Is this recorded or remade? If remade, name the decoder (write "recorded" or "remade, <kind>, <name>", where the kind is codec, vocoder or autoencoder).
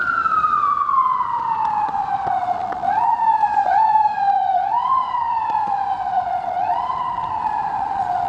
remade, vocoder, Vocos